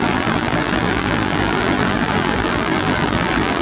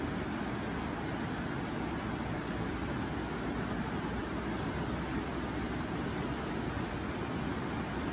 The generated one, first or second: first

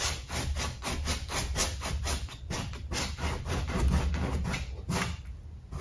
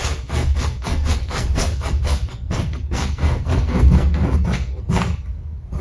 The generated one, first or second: second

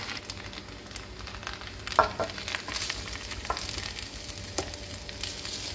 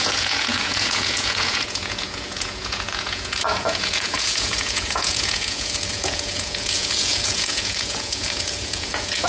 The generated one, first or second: second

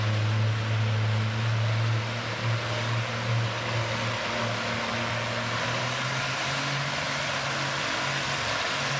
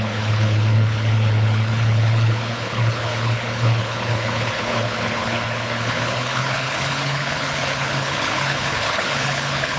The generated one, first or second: second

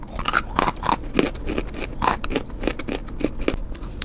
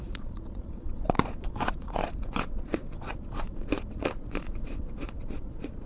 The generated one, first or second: second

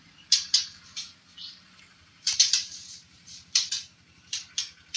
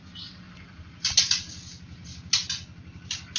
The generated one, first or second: first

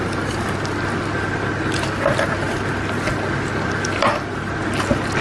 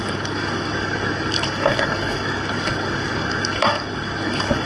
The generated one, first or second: second